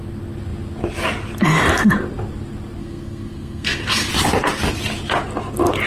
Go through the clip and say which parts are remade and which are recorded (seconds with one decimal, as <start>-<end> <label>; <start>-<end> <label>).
0.0-2.8 recorded; 2.8-4.1 remade; 4.1-5.9 recorded